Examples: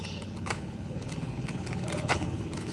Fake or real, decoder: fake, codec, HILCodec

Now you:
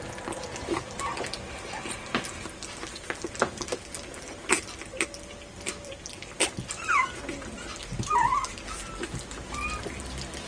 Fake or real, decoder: real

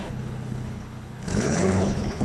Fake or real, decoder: fake, codec, HILCodec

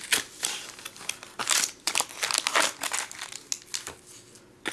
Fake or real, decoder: real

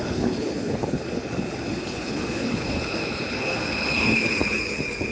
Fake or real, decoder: fake, codec, HILCodec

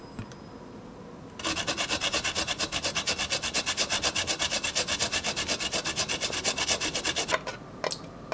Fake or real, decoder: real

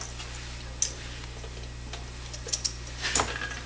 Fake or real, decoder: real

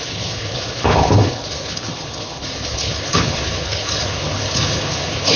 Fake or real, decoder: fake, codec, HILCodec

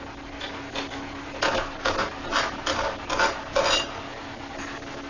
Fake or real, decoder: real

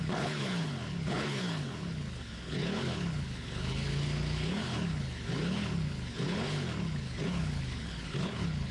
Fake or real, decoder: fake, codec, HILCodec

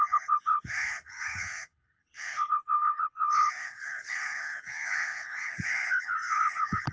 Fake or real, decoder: fake, codec, HILCodec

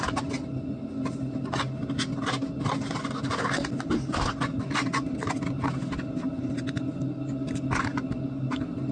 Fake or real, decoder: real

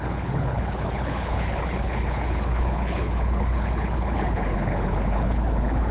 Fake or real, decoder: fake, codec, HILCodec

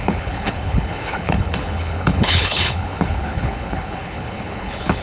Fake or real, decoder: fake, codec, HILCodec